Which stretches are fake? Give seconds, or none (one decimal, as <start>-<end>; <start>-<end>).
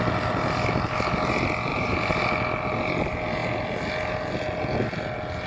1.7-2.2